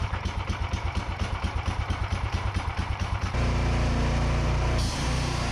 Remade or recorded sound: remade